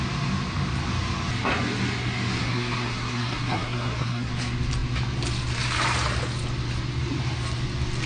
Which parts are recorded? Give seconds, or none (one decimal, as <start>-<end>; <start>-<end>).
0.0-2.4; 4.3-8.1